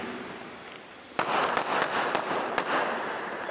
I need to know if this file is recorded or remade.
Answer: recorded